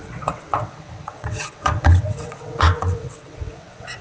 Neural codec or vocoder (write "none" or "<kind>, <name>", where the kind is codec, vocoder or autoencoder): vocoder, WaveNeXt